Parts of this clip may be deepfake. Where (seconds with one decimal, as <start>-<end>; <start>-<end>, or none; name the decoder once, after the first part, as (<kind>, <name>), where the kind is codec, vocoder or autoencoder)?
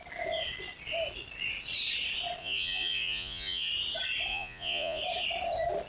2.4-3.7 (vocoder, Vocos); 4.3-5.0